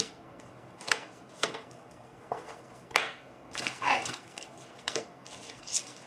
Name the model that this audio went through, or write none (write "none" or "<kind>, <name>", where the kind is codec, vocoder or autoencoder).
codec, SNAC